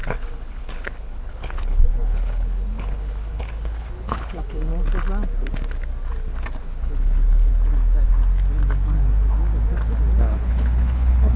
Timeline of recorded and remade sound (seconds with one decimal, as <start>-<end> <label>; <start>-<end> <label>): 0.0-4.7 remade; 4.7-6.6 recorded; 6.6-7.5 remade; 7.5-10.2 recorded; 10.2-11.4 remade